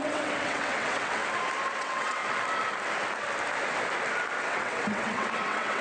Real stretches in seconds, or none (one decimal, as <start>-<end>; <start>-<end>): 1.2-1.7; 2.2-4.4